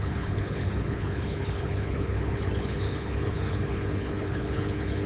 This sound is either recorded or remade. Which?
remade